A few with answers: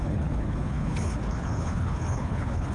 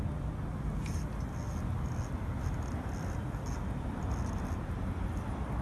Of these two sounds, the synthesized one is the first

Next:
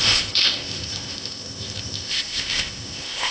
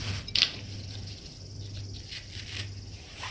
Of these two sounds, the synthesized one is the first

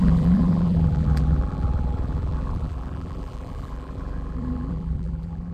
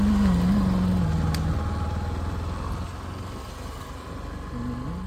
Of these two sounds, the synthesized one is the first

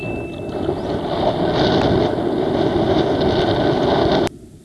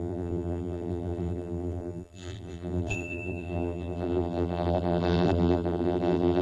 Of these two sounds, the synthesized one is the second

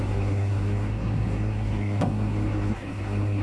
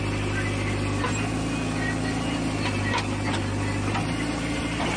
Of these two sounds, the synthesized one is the first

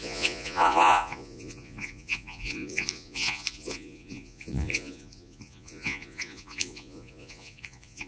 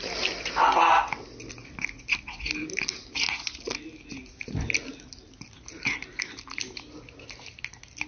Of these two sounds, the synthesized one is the first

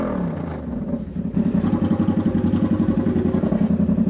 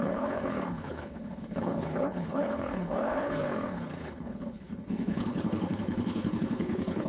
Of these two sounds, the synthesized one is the second